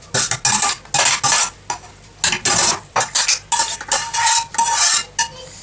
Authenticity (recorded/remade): recorded